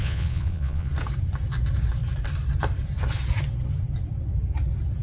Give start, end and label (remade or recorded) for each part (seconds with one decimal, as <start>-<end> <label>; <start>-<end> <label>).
0.0-0.9 remade; 0.9-5.0 recorded